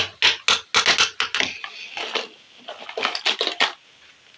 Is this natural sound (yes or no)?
yes